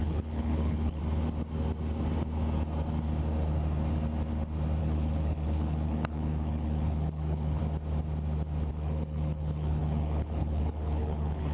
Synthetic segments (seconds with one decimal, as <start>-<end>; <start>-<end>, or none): 0.0-1.0; 4.8-7.6; 8.7-11.5